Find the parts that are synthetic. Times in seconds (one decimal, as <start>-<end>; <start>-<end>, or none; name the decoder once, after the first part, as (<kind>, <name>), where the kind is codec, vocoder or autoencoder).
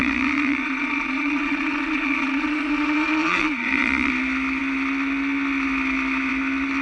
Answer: 0.0-4.1 (vocoder, Vocos)